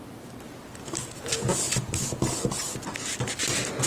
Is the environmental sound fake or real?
real